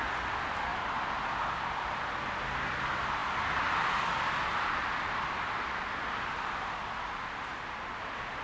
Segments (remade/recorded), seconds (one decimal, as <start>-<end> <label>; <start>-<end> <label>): 0.0-0.7 recorded; 0.7-1.4 remade; 1.4-8.4 recorded